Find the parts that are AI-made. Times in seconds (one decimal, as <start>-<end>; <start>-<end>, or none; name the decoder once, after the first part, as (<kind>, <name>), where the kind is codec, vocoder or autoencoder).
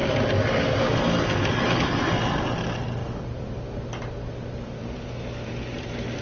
none